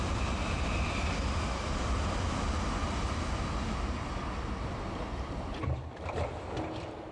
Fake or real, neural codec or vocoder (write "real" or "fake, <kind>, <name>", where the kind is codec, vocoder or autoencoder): real